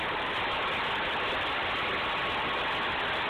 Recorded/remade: recorded